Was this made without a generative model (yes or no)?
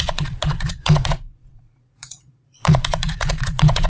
no